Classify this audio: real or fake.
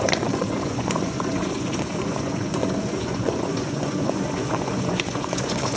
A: fake